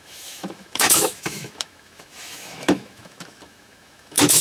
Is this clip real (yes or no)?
no